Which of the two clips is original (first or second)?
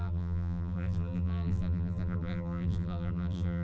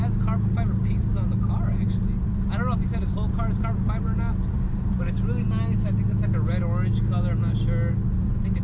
second